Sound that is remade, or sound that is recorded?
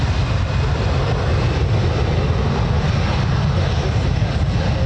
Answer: recorded